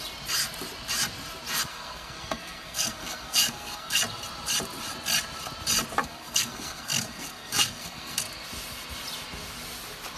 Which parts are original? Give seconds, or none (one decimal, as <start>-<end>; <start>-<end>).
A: 0.0-1.7; 4.0-6.0; 8.2-10.2